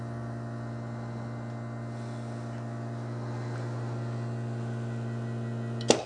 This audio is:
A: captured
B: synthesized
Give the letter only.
A